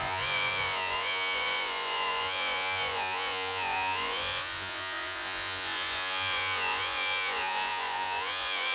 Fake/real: fake